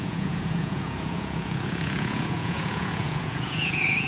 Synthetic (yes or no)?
yes